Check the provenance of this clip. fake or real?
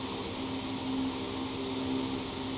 real